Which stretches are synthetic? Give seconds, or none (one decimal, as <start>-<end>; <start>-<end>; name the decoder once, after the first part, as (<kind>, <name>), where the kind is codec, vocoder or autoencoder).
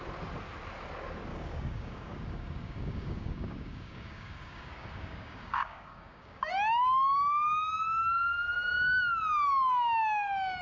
1.3-6.5 (codec, DAC)